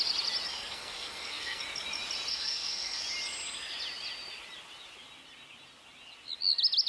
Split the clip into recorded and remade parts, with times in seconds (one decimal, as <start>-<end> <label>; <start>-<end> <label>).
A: 0.0-0.5 recorded; 0.5-1.6 remade; 1.6-2.3 recorded; 2.3-3.0 remade; 3.0-6.9 recorded